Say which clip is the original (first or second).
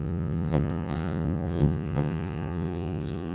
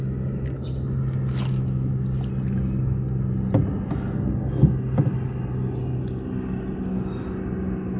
second